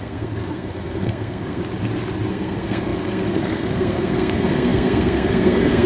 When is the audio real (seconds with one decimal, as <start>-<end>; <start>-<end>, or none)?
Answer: 1.6-2.3